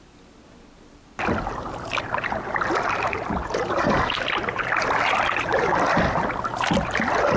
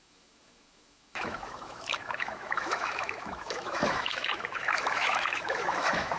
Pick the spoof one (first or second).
second